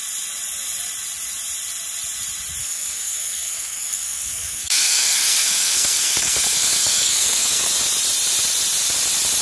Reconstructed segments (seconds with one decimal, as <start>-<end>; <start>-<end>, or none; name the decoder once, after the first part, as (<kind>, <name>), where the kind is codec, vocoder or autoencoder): 2.6-7.7 (codec, SNAC)